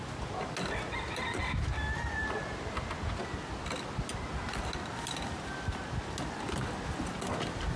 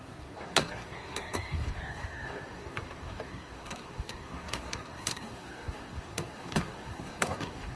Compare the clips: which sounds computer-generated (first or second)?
second